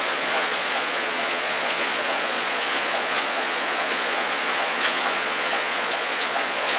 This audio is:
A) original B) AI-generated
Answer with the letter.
B